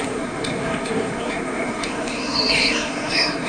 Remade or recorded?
remade